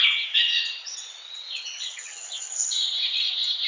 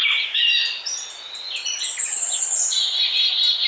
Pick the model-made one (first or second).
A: first